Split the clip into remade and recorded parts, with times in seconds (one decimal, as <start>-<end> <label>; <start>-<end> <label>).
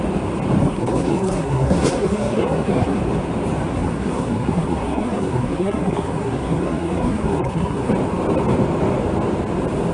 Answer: 0.0-0.6 recorded; 0.6-3.0 remade; 3.0-3.7 recorded; 3.7-7.9 remade; 7.9-9.9 recorded